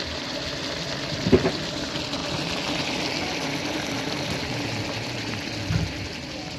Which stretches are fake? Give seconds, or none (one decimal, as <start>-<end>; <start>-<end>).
none